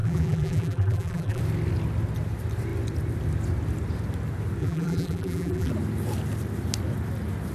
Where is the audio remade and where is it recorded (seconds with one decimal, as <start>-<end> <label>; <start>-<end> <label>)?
0.0-1.4 remade; 1.4-4.6 recorded; 4.6-5.7 remade; 5.7-7.5 recorded